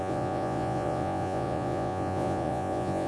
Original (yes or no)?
no